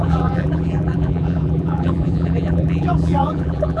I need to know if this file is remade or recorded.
remade